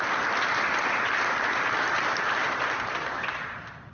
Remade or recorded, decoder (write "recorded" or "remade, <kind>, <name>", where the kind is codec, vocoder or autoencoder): recorded